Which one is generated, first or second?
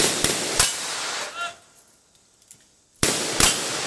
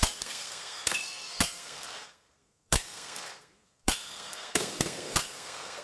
second